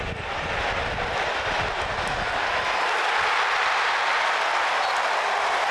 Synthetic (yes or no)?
no